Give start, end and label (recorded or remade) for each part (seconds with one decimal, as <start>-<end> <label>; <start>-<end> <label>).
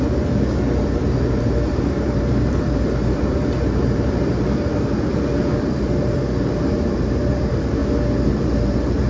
0.0-7.8 remade; 7.8-8.3 recorded; 8.3-9.1 remade